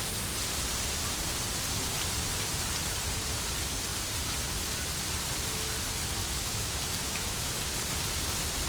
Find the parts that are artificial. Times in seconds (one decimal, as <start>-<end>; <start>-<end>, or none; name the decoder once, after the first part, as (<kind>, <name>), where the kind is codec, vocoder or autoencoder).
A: 6.2-7.6 (autoencoder, DAC-VAE)